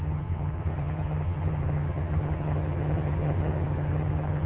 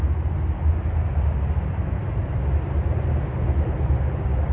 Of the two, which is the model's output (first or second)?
first